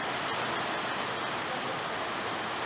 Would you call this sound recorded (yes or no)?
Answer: yes